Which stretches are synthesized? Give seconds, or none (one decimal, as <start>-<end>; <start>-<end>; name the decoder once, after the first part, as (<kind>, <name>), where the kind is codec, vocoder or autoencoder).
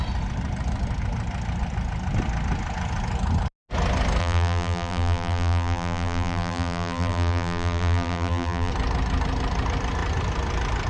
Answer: 4.2-8.7 (vocoder, BigVGAN v2)